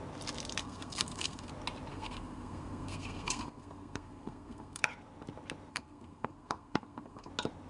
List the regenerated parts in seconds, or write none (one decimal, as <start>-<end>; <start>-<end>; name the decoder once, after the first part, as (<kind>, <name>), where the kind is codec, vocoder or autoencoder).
0.6-1.5 (codec, SNAC); 1.9-4.8; 5.7-7.3